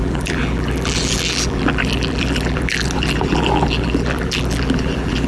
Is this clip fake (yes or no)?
yes